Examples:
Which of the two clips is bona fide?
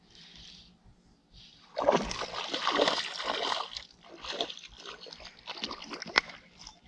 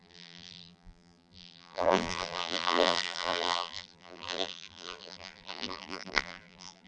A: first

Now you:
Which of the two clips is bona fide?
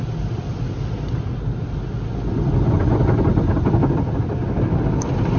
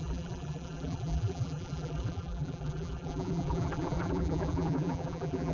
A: first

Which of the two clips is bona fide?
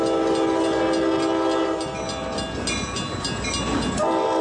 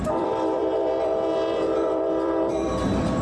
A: first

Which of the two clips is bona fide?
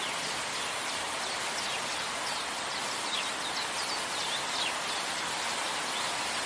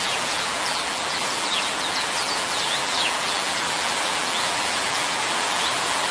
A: first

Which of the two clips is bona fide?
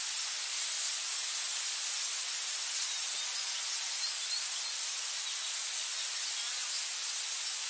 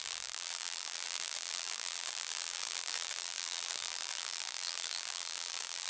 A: first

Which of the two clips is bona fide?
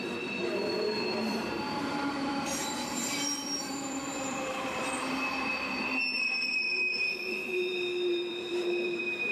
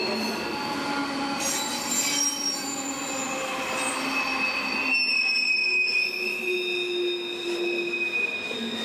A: second